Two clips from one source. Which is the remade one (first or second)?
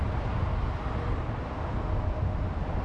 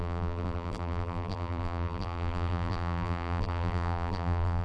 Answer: second